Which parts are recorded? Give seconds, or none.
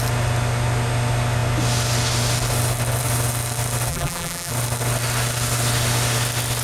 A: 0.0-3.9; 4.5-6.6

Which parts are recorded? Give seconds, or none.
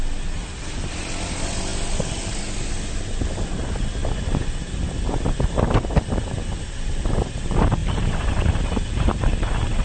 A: 0.0-7.8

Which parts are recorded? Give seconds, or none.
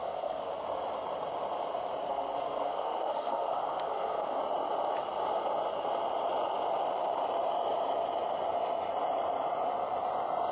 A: 0.5-2.1; 4.4-10.5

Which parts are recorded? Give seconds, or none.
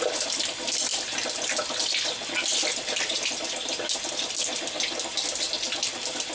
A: 0.0-6.3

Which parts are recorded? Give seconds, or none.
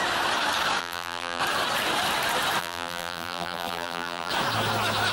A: 0.0-0.8; 1.4-2.6; 4.3-5.1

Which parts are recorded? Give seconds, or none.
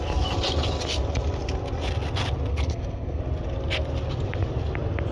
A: 0.0-2.5; 3.2-5.1